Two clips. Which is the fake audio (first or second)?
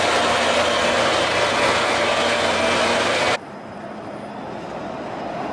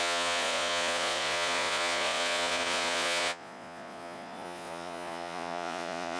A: second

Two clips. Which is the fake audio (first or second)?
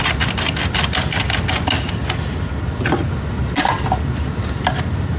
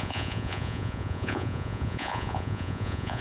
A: second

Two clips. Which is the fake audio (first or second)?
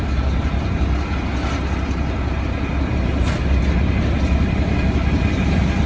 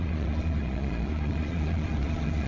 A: second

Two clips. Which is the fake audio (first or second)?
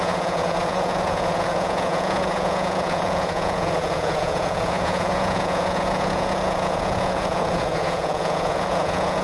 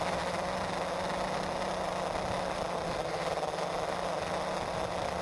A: first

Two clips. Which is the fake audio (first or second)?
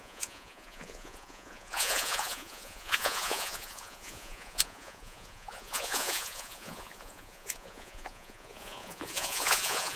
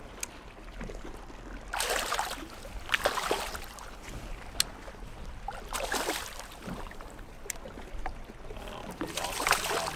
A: first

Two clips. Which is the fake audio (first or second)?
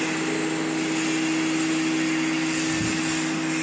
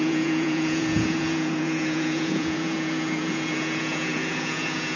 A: second